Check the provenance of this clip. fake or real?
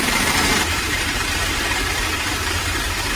fake